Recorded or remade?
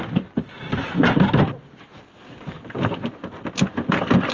recorded